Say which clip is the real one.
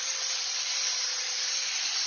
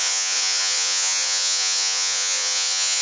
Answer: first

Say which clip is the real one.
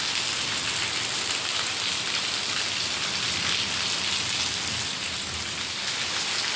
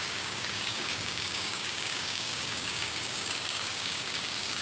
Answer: first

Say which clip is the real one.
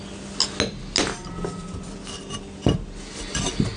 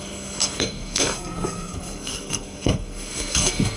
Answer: first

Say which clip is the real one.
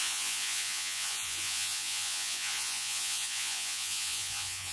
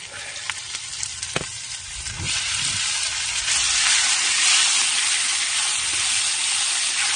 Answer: second